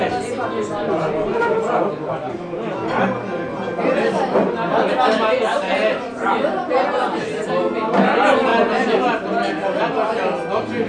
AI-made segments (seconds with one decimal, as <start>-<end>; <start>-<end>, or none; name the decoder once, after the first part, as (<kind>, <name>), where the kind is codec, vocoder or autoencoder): 8.5-9.8 (vocoder, BigVGAN v2)